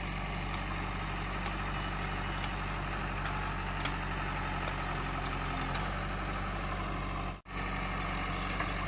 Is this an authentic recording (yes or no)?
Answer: yes